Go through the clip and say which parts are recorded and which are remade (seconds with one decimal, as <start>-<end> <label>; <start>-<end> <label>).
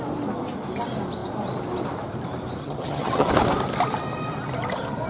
0.0-2.6 recorded; 2.6-3.3 remade; 3.3-5.1 recorded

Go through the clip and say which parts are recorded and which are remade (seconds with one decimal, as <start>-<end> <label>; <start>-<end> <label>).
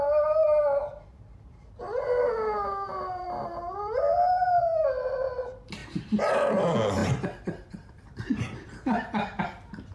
0.0-2.9 recorded; 2.9-4.3 remade; 4.3-5.8 recorded; 5.8-6.5 remade; 6.5-7.0 recorded; 7.0-9.4 remade; 9.4-9.9 recorded